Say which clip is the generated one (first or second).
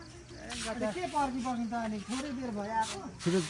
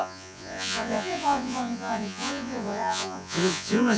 second